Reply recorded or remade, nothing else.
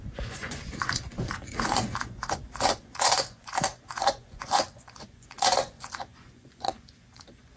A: remade